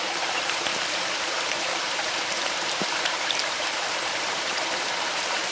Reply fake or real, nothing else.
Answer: fake